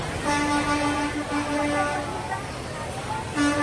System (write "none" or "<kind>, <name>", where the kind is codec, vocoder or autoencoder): none